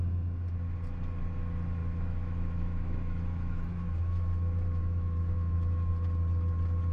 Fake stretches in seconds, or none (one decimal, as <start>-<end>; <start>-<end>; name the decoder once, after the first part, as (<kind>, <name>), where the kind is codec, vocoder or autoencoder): 1.8-5.9 (autoencoder, DAC-VAE)